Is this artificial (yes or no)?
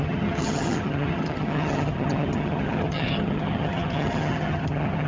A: yes